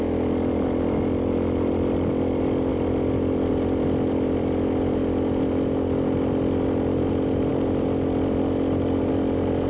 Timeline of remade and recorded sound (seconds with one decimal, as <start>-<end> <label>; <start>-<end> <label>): 0.0-9.7 recorded